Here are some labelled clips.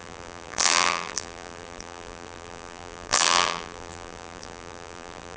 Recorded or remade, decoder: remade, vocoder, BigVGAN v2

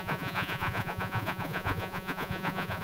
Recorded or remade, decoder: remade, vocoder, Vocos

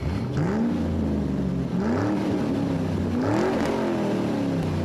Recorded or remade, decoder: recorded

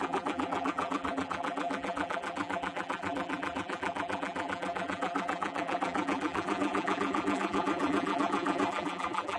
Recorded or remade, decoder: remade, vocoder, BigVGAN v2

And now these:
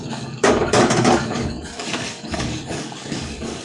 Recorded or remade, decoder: remade, codec, DAC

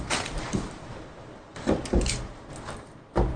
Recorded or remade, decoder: recorded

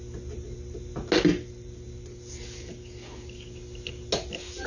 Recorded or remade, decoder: recorded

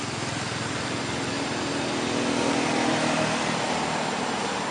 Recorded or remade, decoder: recorded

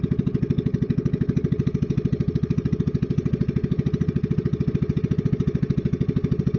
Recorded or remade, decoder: recorded